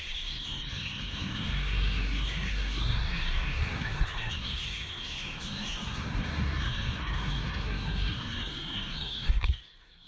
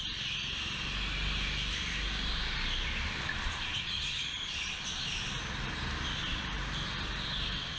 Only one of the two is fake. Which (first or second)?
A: first